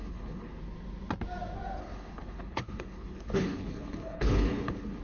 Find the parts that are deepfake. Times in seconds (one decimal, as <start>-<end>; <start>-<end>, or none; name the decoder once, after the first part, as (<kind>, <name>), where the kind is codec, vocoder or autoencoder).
0.0-0.6 (codec, HILCodec); 1.8-5.0